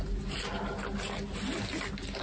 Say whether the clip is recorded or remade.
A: recorded